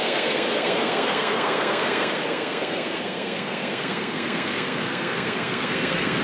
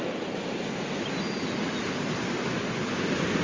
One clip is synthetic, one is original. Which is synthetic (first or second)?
first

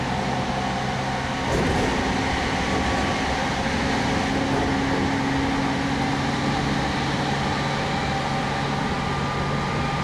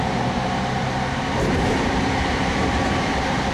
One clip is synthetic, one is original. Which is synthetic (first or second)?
second